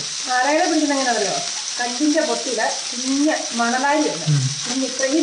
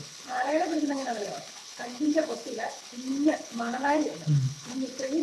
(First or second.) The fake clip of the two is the second